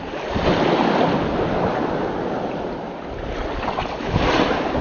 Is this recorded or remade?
recorded